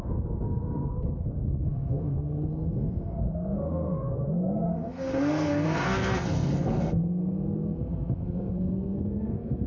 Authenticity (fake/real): fake